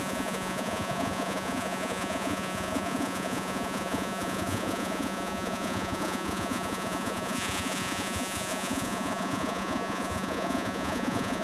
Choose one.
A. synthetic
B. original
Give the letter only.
A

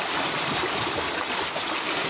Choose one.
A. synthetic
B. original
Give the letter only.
B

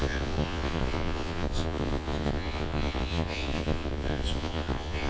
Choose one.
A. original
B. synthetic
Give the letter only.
B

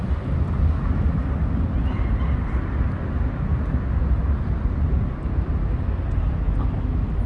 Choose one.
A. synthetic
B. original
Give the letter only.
B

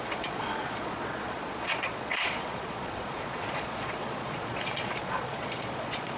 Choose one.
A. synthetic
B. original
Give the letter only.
A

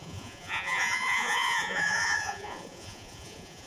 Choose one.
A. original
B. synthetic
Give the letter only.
B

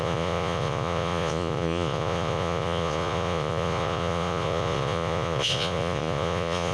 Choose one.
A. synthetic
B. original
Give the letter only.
A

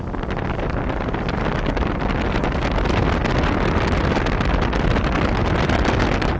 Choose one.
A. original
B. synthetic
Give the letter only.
A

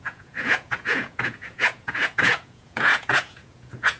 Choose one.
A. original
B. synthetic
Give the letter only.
B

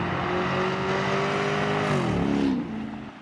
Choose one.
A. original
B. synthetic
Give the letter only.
A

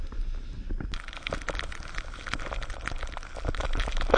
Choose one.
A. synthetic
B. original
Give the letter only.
B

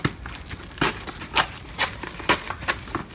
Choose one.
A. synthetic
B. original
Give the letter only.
B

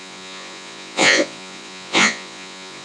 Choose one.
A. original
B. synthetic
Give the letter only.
B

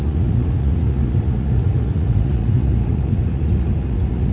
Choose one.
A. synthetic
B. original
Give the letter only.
A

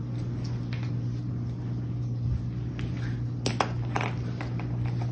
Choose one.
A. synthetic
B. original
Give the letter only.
B